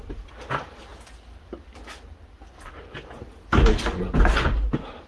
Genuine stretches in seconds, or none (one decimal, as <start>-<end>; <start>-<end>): 0.0-5.1